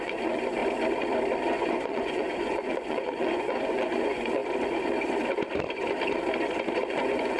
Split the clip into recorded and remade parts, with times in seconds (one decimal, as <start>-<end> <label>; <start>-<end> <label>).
0.0-0.6 remade; 0.6-1.6 recorded; 1.6-4.4 remade; 4.4-6.9 recorded; 6.9-7.4 remade